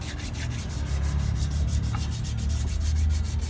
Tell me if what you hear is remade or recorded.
recorded